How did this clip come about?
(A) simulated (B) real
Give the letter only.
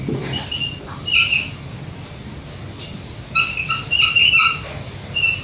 B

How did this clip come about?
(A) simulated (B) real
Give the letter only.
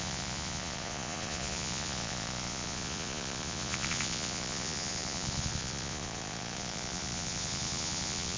A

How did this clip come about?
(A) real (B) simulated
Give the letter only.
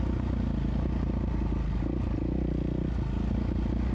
A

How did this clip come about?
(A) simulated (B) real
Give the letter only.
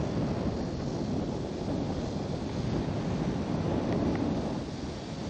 B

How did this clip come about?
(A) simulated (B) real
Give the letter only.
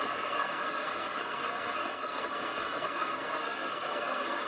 A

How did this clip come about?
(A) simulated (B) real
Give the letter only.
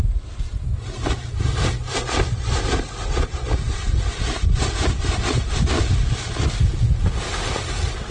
B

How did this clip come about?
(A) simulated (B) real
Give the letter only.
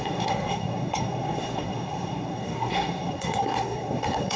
A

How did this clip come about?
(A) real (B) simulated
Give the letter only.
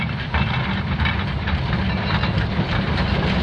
A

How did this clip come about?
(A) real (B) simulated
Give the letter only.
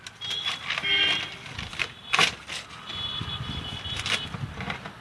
A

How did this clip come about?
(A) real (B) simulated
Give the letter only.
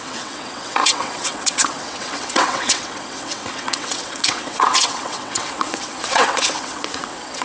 B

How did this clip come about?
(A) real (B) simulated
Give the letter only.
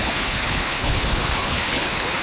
B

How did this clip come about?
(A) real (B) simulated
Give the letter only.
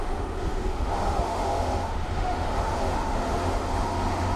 B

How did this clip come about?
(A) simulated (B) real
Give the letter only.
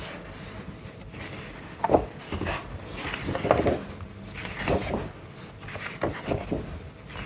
B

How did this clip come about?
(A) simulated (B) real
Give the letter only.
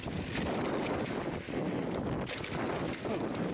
B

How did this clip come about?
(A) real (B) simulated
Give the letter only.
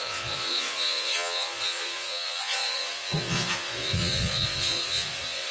B